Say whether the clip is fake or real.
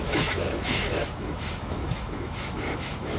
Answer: fake